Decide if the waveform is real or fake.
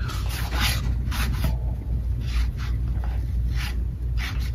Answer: real